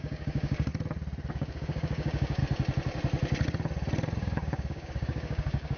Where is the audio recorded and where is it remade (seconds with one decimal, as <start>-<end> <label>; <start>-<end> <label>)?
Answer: 0.0-0.7 remade; 0.7-1.3 recorded; 1.3-2.4 remade; 2.4-4.2 recorded; 4.2-5.8 remade